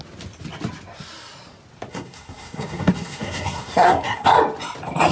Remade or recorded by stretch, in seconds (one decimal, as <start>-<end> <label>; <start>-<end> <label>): 0.0-1.9 recorded; 1.9-4.3 remade; 4.3-5.1 recorded